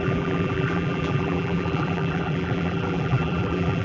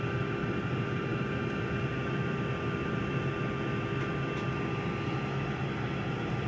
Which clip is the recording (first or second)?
second